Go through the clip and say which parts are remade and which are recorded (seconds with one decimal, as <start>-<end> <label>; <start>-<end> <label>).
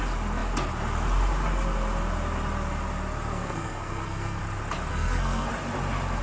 0.0-3.3 recorded; 3.3-4.4 remade; 4.4-4.9 recorded; 4.9-5.5 remade; 5.5-6.2 recorded